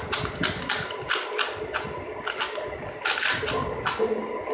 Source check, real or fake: real